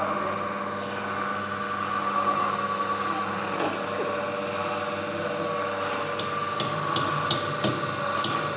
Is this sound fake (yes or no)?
no